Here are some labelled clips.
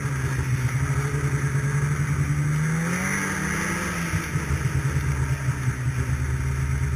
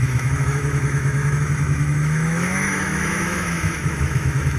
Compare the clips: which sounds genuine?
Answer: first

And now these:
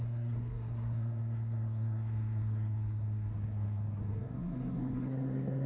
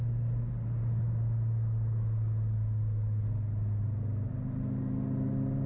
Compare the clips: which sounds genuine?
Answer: second